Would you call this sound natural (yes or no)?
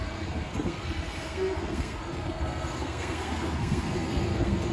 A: no